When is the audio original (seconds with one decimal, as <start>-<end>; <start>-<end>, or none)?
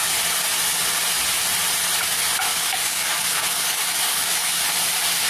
0.0-2.5; 4.6-5.3